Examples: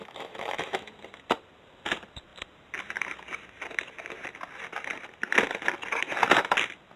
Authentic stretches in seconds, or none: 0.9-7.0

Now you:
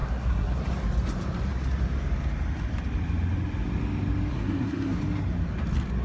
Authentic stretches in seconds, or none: 0.7-4.3; 5.0-6.0

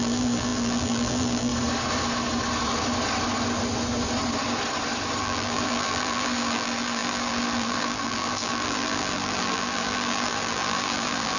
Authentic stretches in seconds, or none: 1.5-5.2

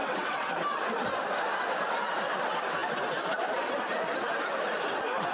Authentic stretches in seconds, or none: 0.5-5.3

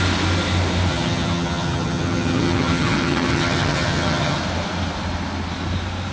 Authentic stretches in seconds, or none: 0.0-0.9; 4.4-6.1

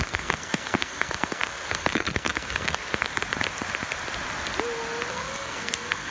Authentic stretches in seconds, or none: 3.1-5.1